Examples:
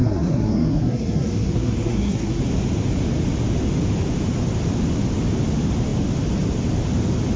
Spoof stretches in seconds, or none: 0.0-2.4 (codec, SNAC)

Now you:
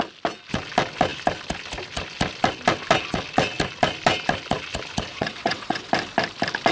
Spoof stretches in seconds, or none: 5.1-5.9 (vocoder, WaveNeXt)